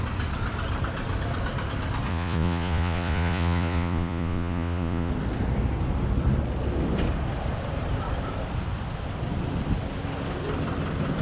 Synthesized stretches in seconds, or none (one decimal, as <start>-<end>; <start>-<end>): 2.1-5.1